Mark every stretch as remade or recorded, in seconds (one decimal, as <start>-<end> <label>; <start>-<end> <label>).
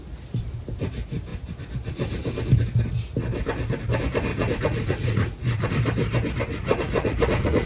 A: 0.0-4.3 recorded; 4.3-5.7 remade; 5.7-6.5 recorded; 6.5-7.7 remade